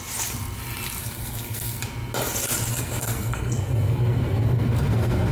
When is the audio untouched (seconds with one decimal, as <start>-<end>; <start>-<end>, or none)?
0.0-1.0; 1.8-2.7